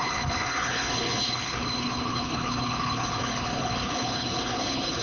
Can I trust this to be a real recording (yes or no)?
no